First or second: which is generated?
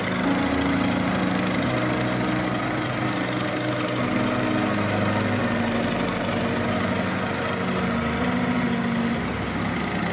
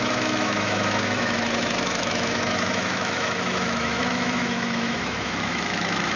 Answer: second